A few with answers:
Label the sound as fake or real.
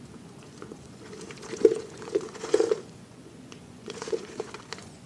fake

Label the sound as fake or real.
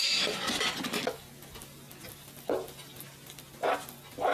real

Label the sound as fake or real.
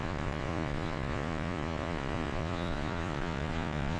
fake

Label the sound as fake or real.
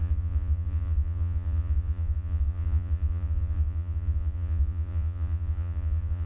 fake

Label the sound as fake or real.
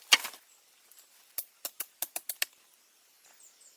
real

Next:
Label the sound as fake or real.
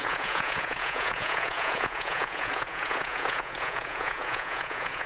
fake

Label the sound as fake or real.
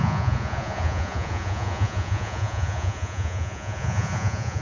fake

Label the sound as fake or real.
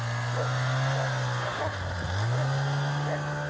real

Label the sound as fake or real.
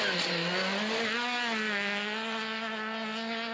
real